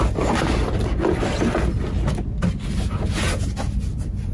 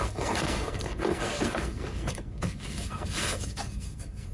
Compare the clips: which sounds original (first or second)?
first